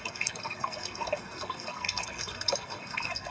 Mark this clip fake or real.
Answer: fake